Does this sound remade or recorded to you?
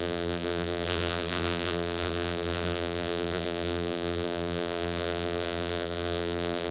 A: remade